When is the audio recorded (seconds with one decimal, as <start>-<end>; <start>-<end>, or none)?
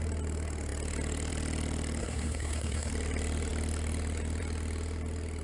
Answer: 0.0-2.0; 2.9-5.4